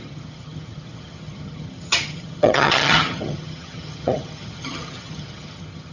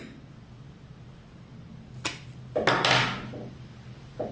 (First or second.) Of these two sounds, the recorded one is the second